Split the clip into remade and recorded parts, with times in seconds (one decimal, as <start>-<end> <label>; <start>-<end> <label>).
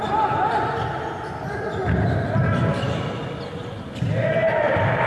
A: 0.0-5.1 recorded